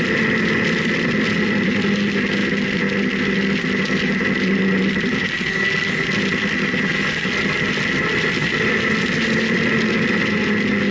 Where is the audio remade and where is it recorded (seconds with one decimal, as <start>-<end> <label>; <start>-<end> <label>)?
0.0-10.9 recorded